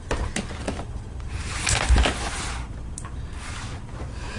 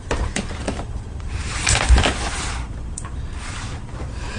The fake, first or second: second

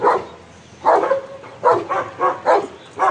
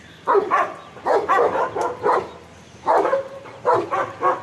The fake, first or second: second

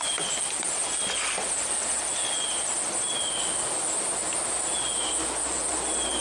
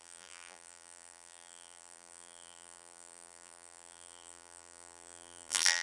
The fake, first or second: second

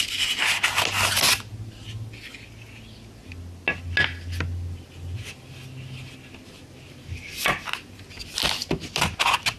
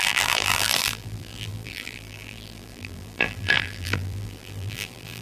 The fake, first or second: second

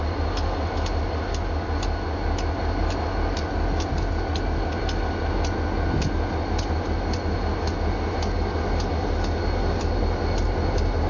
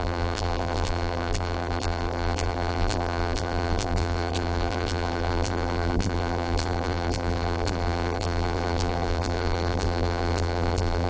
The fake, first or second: second